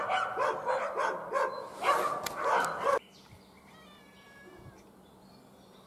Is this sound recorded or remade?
recorded